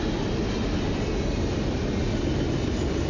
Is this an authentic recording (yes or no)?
yes